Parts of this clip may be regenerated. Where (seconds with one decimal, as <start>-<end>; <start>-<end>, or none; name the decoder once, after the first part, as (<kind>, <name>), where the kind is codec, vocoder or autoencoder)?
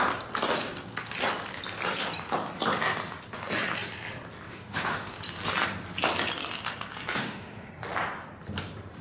4.5-5.2 (autoencoder, DAC-VAE); 7.1-7.7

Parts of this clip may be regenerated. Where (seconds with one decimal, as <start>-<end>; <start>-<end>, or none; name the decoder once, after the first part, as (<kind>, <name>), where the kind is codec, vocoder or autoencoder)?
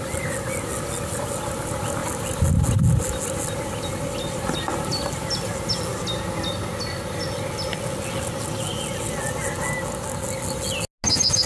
none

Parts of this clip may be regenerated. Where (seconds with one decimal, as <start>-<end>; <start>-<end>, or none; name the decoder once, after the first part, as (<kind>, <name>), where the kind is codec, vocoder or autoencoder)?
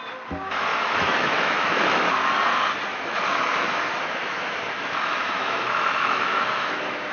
0.7-2.3 (autoencoder, DAC-VAE); 2.9-7.1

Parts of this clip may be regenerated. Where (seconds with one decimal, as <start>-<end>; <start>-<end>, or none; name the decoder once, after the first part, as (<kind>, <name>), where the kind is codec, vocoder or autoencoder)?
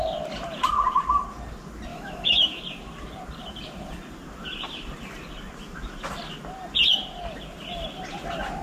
1.9-2.6 (autoencoder, DAC-VAE)